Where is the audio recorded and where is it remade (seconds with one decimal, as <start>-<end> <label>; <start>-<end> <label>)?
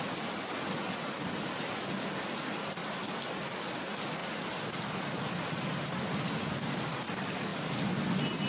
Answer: 0.0-8.5 recorded